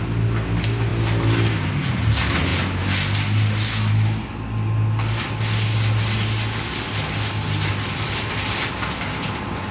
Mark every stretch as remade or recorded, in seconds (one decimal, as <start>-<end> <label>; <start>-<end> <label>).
0.0-9.7 recorded